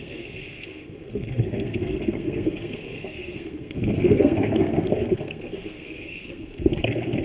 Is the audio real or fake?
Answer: fake